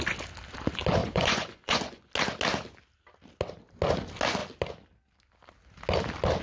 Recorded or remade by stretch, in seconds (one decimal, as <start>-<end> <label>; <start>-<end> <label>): 0.0-1.0 recorded; 1.0-2.1 remade; 2.1-6.4 recorded